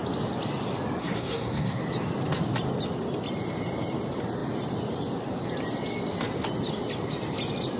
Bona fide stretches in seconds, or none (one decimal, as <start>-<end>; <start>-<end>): 0.0-1.0; 1.8-7.8